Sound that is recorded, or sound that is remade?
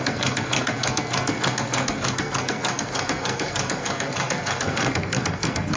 remade